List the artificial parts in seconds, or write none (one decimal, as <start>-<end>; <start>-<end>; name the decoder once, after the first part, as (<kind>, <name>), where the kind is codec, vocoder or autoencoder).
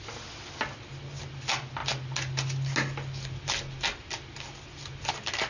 none